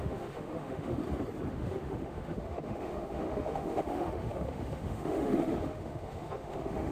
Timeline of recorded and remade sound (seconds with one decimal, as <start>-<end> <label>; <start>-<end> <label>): 0.0-1.0 remade; 1.0-1.5 recorded; 1.5-6.9 remade